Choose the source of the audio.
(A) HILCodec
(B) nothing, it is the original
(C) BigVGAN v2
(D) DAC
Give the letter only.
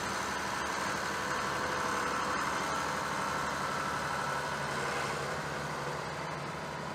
B